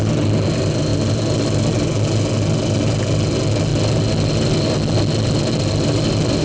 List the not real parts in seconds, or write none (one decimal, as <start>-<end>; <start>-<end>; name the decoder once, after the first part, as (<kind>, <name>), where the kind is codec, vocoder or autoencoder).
none